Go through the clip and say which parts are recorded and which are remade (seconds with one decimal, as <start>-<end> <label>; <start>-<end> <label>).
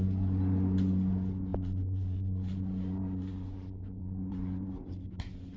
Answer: 0.0-1.5 recorded; 1.5-4.9 remade; 4.9-5.6 recorded